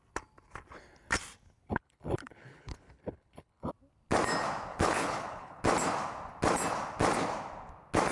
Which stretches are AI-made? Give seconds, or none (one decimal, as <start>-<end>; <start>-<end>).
1.7-3.7; 4.7-5.6